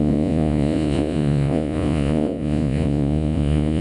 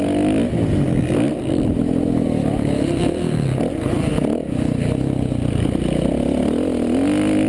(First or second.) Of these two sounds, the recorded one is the second